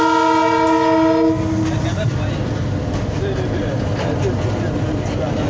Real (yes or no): yes